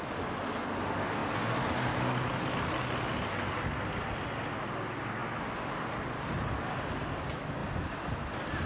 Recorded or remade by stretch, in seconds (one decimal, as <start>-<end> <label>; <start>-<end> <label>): 0.0-8.7 recorded